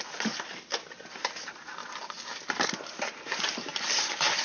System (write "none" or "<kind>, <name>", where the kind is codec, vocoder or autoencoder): none